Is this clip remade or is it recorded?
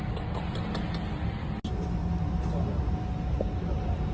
recorded